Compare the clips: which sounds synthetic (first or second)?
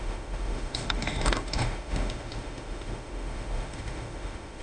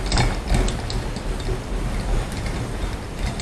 first